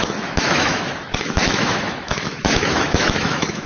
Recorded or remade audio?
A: remade